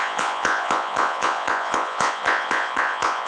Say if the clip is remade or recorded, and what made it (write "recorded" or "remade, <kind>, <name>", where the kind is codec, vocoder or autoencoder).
remade, vocoder, Vocos